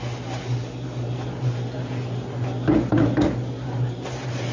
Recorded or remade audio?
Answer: recorded